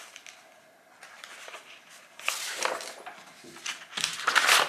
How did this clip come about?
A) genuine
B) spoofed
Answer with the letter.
A